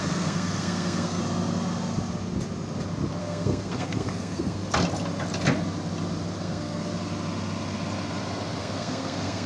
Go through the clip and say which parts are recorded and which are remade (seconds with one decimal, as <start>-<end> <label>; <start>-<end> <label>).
0.0-1.2 remade; 1.2-3.2 recorded; 3.2-4.6 remade; 4.6-6.4 recorded; 6.4-6.9 remade; 6.9-8.6 recorded; 8.6-9.5 remade